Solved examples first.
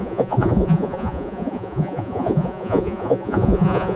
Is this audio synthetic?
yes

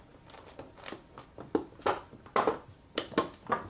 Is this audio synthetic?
no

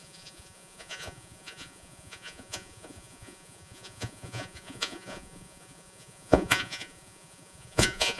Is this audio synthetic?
yes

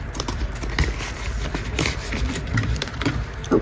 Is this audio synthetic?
yes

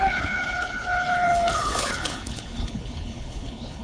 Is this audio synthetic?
yes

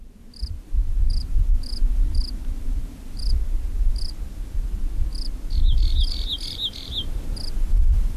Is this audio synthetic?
no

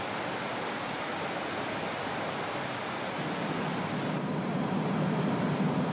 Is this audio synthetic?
no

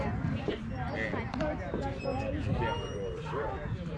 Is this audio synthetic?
no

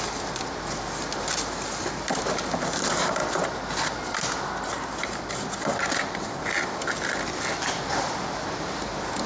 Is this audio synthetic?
no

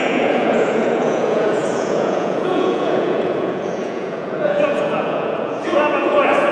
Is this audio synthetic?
yes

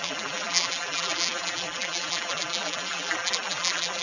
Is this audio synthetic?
yes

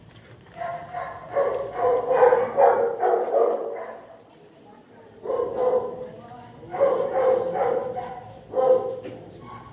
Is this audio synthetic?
no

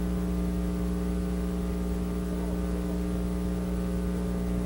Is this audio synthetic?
no